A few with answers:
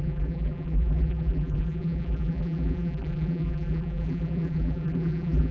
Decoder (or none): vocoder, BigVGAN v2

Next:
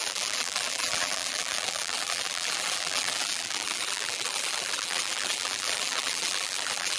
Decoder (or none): vocoder, BigVGAN v2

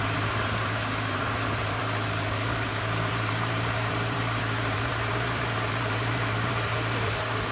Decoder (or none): vocoder, BigVGAN v2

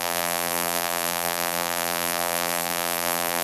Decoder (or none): vocoder, BigVGAN v2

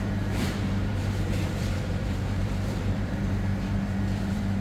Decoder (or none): vocoder, BigVGAN v2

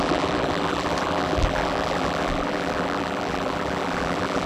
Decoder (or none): vocoder, BigVGAN v2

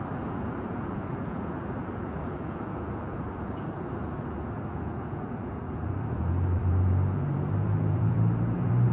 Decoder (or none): vocoder, BigVGAN v2